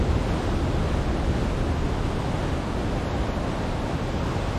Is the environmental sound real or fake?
real